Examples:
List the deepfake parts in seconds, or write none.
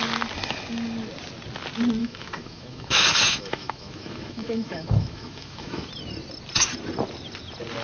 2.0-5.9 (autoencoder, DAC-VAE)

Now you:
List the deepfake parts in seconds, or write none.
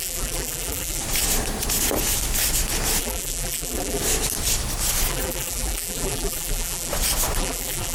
0.0-1.0 (vocoder, BigVGAN v2); 3.0-4.0; 5.1-6.9; 7.4-7.9